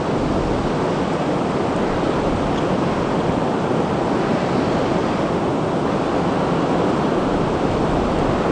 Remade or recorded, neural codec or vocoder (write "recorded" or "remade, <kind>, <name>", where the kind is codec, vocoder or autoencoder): recorded